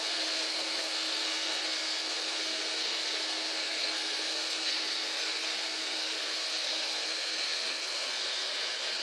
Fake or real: fake